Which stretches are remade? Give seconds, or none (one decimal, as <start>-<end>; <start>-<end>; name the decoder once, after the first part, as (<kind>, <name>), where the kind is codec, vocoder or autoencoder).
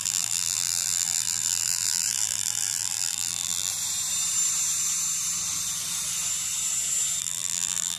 0.0-3.7 (vocoder, BigVGAN v2); 7.2-8.0